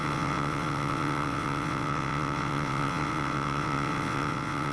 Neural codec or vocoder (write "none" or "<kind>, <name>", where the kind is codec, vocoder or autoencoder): vocoder, WaveNeXt